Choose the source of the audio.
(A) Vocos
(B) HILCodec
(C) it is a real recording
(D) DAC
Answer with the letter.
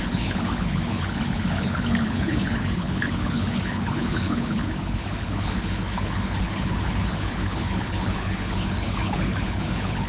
B